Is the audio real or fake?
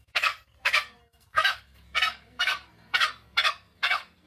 fake